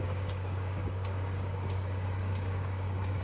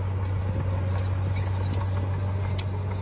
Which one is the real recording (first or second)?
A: second